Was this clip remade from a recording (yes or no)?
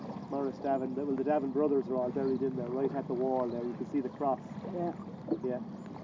no